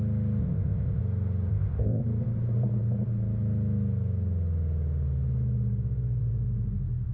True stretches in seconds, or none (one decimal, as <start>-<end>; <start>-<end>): 0.0-0.4; 1.0-1.5; 2.0-7.1